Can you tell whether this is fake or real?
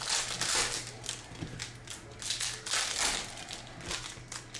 real